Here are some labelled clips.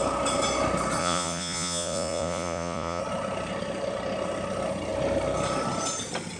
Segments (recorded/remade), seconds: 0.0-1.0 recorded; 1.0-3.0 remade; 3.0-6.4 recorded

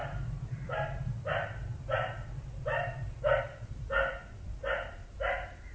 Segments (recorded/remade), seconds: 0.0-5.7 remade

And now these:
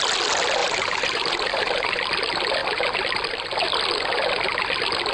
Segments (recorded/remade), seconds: 0.0-0.6 recorded; 0.6-1.9 remade; 1.9-5.1 recorded